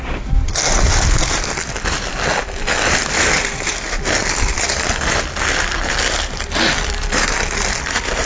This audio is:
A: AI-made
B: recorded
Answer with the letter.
A